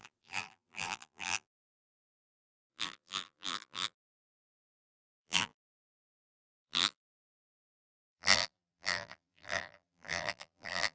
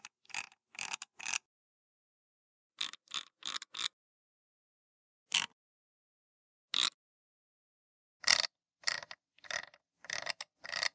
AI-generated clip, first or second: first